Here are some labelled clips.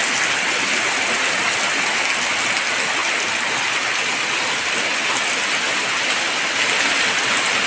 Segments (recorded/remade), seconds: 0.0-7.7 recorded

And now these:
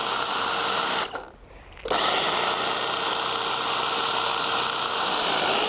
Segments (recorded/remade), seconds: 0.0-5.7 recorded

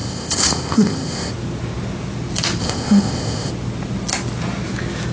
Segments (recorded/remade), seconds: 0.0-1.3 remade; 1.3-2.6 recorded; 2.6-3.5 remade; 3.5-5.1 recorded

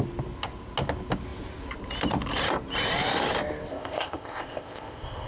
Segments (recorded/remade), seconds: 0.0-3.7 recorded; 3.7-5.3 remade